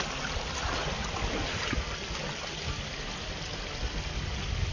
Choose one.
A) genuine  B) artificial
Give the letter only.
A